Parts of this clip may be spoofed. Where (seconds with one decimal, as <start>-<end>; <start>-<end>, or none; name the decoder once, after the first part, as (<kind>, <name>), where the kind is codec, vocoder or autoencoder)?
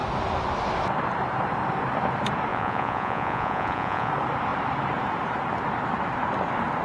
2.5-4.1 (vocoder, Vocos)